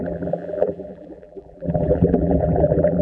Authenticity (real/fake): fake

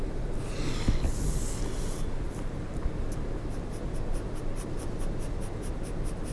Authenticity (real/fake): fake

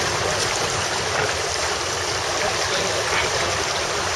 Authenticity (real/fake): fake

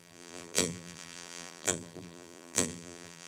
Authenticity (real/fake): fake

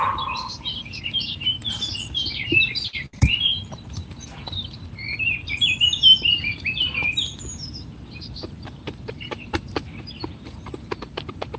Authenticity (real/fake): fake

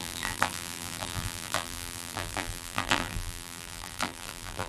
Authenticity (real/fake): fake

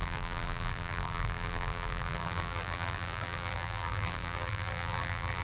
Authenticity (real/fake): fake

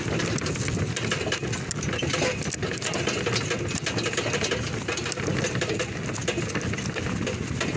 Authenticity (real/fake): real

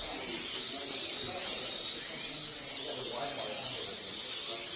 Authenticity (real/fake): real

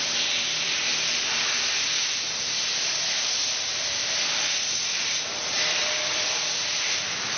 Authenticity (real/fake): fake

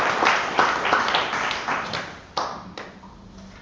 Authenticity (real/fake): real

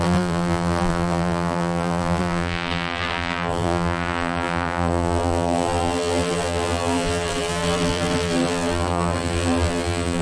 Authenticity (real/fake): fake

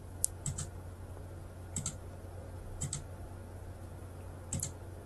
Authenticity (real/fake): real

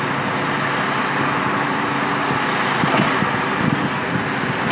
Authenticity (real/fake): real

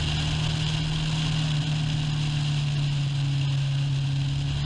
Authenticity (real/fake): real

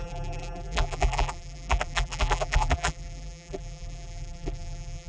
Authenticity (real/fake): fake